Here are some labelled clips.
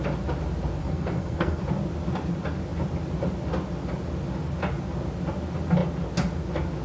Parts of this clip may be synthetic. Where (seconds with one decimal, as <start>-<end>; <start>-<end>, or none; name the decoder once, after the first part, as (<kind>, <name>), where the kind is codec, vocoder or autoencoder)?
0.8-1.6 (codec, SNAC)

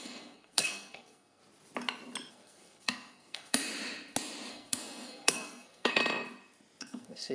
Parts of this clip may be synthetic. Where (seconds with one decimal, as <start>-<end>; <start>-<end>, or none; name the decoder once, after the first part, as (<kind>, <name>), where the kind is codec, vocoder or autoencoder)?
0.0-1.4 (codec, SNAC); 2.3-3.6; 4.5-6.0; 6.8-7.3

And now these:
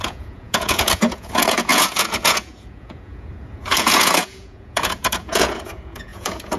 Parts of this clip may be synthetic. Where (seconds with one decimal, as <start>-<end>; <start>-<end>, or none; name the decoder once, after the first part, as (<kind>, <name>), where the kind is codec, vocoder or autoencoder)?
0.0-6.6 (vocoder, Vocos)

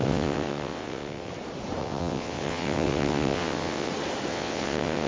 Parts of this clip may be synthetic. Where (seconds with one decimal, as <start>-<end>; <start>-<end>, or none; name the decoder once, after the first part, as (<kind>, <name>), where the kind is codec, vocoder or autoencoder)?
0.0-1.3 (vocoder, WaveNeXt); 1.8-3.9; 4.3-5.1

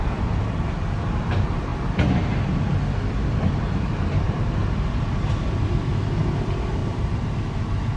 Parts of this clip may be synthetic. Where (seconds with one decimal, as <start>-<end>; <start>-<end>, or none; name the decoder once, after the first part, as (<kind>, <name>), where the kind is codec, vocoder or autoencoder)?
0.0-1.7 (vocoder, BigVGAN v2); 3.5-4.6; 5.8-8.0